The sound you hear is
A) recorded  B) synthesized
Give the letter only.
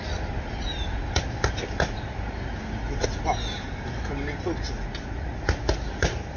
A